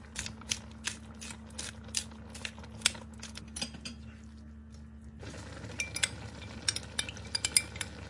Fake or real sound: real